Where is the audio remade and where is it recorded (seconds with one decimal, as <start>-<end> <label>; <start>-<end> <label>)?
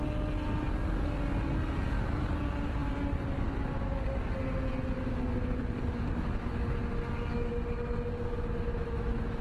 0.0-8.7 recorded; 8.7-9.4 remade